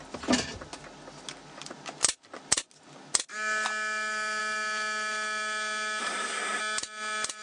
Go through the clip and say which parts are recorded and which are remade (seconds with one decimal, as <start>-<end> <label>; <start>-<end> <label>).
0.0-6.0 recorded; 6.0-6.6 remade; 6.6-7.4 recorded